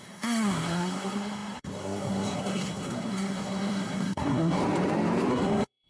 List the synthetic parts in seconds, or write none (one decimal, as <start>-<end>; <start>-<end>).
0.0-4.6; 5.3-5.9